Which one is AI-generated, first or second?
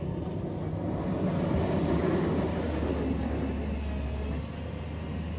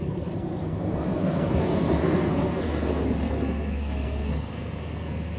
second